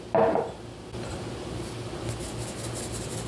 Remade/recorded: recorded